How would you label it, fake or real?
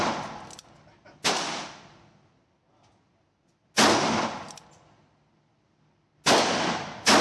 real